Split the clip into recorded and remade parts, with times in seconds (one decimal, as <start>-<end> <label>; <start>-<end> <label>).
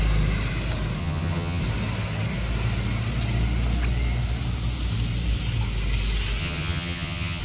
0.0-1.0 recorded; 1.0-1.6 remade; 1.6-6.4 recorded; 6.4-7.4 remade